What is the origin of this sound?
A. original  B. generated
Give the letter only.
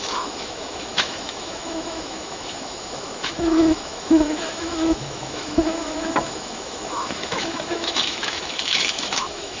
B